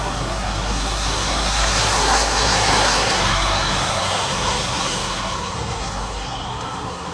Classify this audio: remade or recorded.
remade